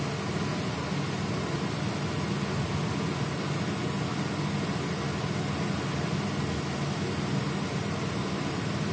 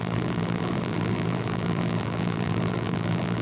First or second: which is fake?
second